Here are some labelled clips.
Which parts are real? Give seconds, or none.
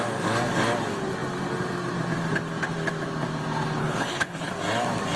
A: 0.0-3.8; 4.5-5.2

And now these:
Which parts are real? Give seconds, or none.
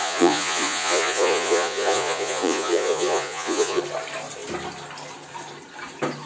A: 3.8-6.3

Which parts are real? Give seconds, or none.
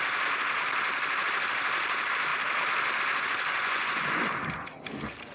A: 0.0-3.5; 4.2-5.3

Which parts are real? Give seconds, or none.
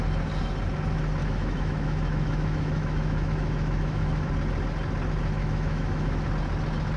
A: 0.0-1.2; 4.3-5.4; 6.3-7.0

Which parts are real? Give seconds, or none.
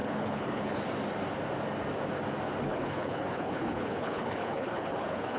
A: 0.8-2.7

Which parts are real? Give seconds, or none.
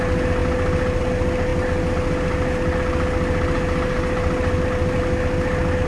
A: 0.0-5.9